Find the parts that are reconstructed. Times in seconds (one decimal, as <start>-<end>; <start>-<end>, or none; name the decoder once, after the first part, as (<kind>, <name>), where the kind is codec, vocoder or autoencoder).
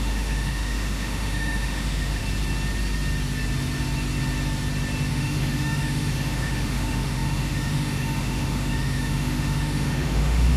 0.0-2.2 (autoencoder, DAC-VAE); 5.1-10.6